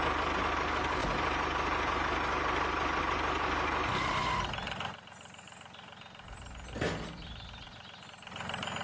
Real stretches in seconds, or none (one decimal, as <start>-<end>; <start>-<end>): 0.0-8.8